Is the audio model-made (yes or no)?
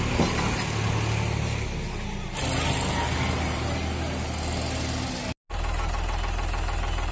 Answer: no